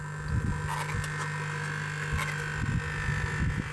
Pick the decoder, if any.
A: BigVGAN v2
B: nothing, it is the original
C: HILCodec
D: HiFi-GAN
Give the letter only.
B